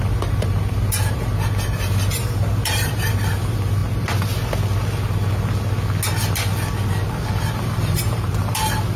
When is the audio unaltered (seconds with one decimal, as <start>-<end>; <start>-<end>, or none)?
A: 3.8-7.4